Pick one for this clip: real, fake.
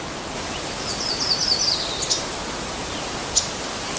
real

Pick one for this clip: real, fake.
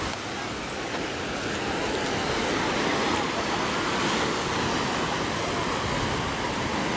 real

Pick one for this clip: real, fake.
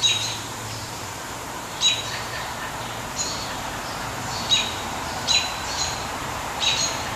fake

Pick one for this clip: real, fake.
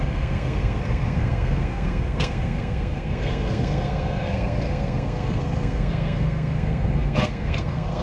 fake